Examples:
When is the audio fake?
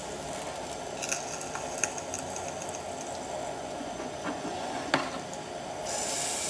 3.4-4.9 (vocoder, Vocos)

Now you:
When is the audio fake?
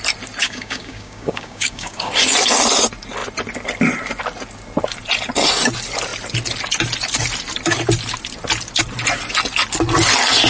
0.4-2.1 (codec, DAC)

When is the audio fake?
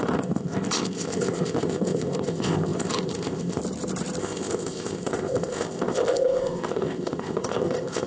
0.0-3.6 (codec, ZipCodec); 4.2-8.1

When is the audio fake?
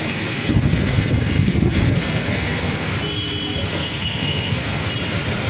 0.0-2.9 (codec, SNAC); 3.7-4.9